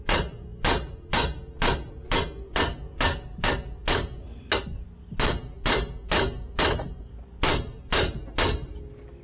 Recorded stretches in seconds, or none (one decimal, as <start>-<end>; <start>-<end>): 0.0-9.2